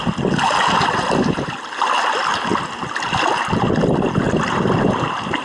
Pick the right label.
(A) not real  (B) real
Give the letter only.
B